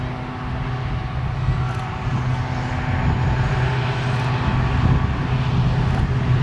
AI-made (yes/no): no